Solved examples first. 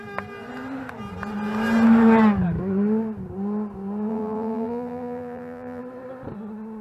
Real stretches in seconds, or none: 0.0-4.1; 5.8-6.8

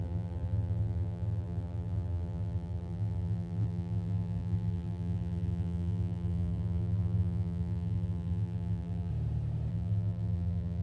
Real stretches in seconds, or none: 9.1-9.7

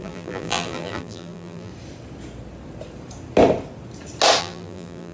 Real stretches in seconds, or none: 1.7-4.4

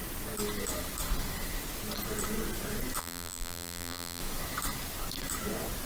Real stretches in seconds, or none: 0.0-3.0; 4.2-5.9

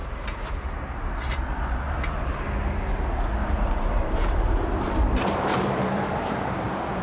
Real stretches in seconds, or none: 0.0-3.4

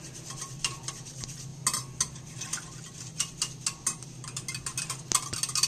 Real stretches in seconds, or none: 0.0-5.7

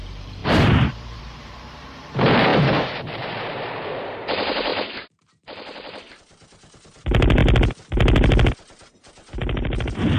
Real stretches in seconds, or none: 7.4-8.5